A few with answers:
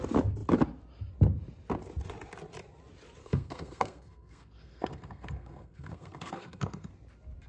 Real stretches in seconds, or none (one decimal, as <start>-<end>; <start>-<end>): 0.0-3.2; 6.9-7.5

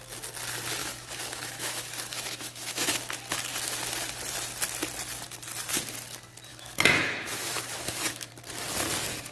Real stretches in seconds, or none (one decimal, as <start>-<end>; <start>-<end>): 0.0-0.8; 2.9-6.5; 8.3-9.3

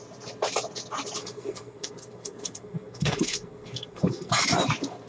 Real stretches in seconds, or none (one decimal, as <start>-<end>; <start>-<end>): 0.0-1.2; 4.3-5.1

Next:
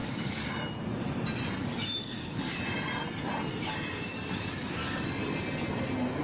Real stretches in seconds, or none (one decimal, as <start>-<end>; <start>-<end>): 0.5-1.6; 2.6-4.1; 5.2-6.2

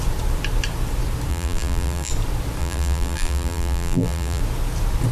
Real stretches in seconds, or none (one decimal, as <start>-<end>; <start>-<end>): 0.0-1.3; 2.1-2.6; 4.4-5.1

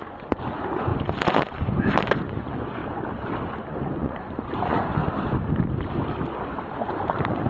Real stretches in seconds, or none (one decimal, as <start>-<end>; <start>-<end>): 2.8-3.7; 5.0-7.1